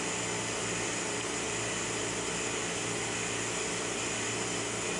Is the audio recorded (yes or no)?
yes